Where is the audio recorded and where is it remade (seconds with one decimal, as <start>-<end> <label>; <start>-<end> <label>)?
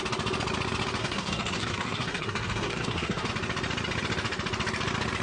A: 0.0-1.0 recorded; 1.0-3.3 remade; 3.3-5.2 recorded